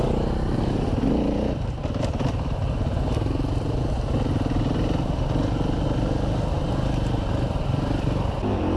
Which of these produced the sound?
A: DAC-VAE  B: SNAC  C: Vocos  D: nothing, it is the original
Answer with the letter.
D